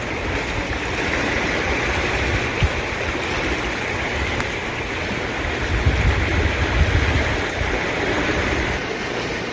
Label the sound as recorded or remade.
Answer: recorded